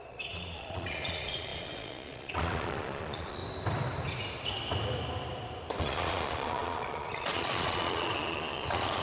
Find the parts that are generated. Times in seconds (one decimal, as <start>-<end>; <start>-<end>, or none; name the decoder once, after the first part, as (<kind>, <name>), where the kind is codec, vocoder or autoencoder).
0.0-3.4 (vocoder, Vocos); 5.8-9.0